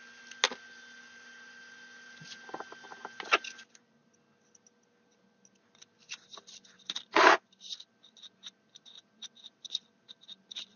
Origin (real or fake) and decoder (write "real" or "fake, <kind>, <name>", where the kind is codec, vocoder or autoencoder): real